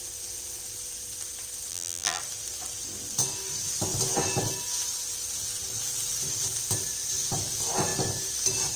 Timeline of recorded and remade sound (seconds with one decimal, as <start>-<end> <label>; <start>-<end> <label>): 0.0-1.7 recorded; 1.7-2.2 remade; 2.2-8.8 recorded